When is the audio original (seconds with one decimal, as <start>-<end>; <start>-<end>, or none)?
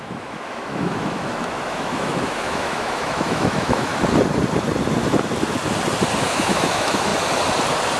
3.9-6.2; 7.1-8.0